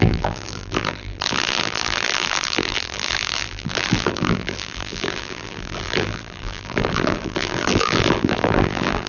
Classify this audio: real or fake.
fake